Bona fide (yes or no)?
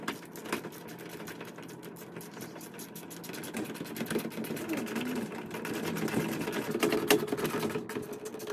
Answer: yes